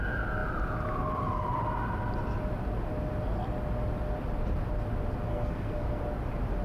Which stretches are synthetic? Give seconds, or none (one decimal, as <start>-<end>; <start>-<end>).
5.3-6.0